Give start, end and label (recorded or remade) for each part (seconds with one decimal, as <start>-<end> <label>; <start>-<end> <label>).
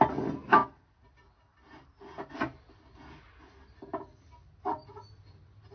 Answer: 0.0-5.7 recorded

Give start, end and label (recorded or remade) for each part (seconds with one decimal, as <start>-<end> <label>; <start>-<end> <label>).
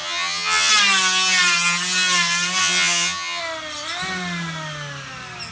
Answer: 0.0-0.7 remade; 0.7-2.6 recorded; 2.6-3.4 remade; 3.4-5.5 recorded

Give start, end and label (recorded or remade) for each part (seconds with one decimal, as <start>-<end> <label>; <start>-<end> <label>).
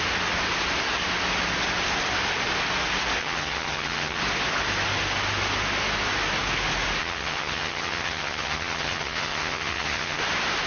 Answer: 0.0-3.2 recorded; 3.2-4.2 remade; 4.2-7.0 recorded; 7.0-10.2 remade; 10.2-10.7 recorded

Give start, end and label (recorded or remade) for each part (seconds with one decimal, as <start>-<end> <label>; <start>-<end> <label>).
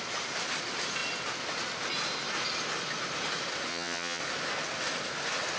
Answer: 0.0-3.7 recorded; 3.7-4.2 remade; 4.2-5.6 recorded